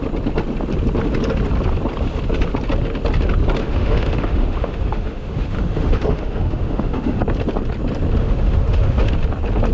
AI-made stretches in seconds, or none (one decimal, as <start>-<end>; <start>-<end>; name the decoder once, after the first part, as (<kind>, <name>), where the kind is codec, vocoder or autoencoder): 3.6-7.2 (autoencoder, DAC-VAE); 8.2-9.1